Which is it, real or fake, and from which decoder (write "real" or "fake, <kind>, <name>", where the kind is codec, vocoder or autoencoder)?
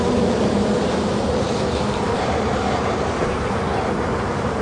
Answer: fake, vocoder, BigVGAN v2